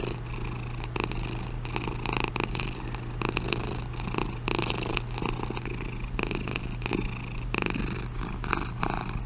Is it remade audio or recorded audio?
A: recorded